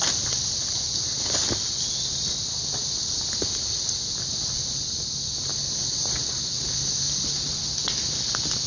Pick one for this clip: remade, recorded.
recorded